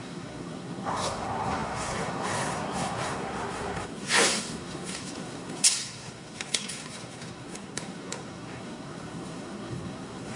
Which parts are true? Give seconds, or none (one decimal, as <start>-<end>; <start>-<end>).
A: none